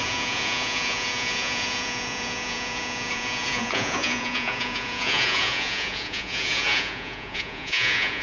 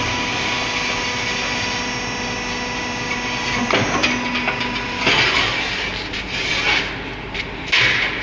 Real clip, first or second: second